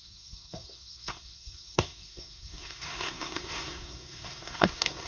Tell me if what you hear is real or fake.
fake